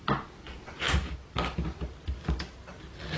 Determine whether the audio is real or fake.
real